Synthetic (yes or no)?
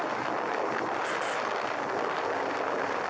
no